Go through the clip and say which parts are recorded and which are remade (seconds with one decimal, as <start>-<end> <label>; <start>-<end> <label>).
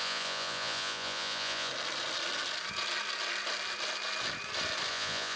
0.0-1.7 remade; 1.7-4.9 recorded; 4.9-5.4 remade